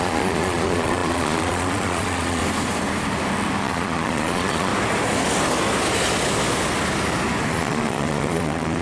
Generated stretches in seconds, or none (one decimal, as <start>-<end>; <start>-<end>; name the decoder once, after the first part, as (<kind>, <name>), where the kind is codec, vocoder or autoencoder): 0.0-2.4 (vocoder, Vocos); 3.6-4.7; 7.5-8.8